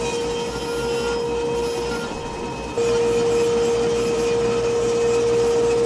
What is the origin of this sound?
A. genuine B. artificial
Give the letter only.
A